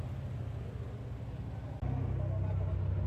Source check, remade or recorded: recorded